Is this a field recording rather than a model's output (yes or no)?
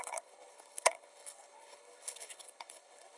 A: no